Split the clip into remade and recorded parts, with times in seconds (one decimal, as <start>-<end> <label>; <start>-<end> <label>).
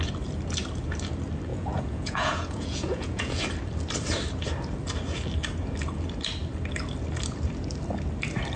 0.0-1.5 recorded; 1.5-3.4 remade; 3.4-8.6 recorded